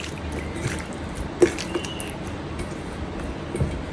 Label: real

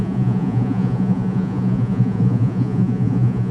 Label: fake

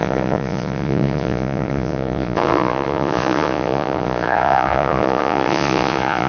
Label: fake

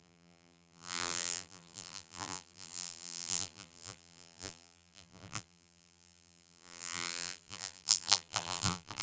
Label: fake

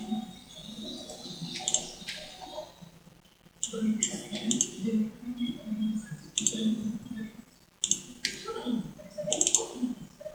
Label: real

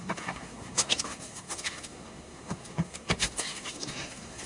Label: fake